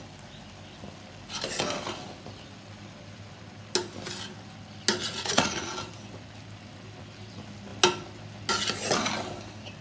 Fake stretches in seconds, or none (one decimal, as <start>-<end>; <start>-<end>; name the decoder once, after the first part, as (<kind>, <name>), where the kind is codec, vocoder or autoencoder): 5.0-5.7 (vocoder, Vocos)